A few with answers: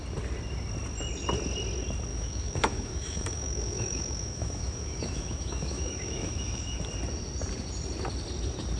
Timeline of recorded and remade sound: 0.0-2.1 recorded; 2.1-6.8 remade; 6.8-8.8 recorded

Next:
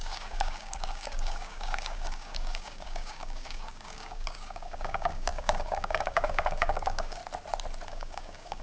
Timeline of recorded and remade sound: 0.0-7.2 remade; 7.2-7.9 recorded; 7.9-8.6 remade

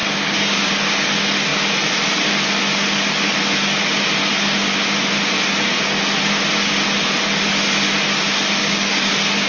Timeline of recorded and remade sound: 0.0-0.7 remade; 0.7-8.6 recorded; 8.6-9.1 remade; 9.1-9.5 recorded

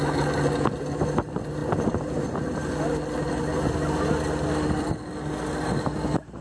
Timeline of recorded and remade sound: 0.0-6.4 recorded

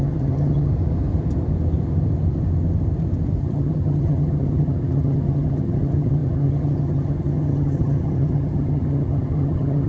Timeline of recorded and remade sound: 0.0-0.7 remade; 0.7-3.4 recorded; 3.4-9.9 remade

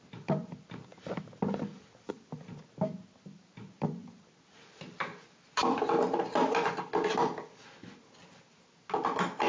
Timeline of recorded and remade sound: 0.0-9.5 recorded